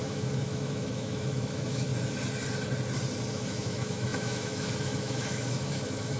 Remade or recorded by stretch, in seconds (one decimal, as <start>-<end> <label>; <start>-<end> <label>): 0.0-1.9 remade; 1.9-3.3 recorded; 3.3-6.2 remade